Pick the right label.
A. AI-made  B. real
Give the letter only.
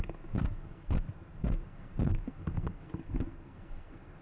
A